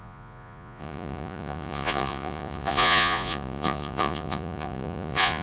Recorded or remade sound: remade